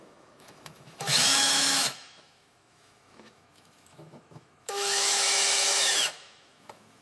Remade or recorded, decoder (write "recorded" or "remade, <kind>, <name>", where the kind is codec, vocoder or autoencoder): remade, autoencoder, DAC-VAE